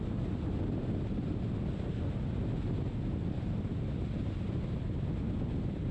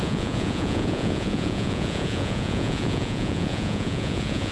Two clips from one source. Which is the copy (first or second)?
second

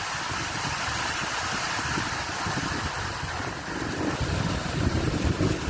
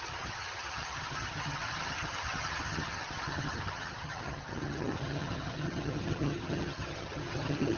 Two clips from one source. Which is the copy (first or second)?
second